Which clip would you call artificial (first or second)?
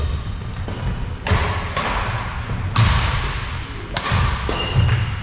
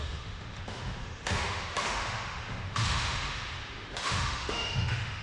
second